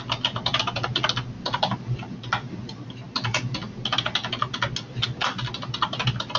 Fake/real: real